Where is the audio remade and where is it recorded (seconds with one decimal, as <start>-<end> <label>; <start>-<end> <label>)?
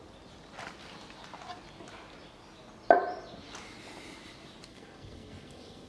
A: 0.0-4.7 recorded; 4.7-5.9 remade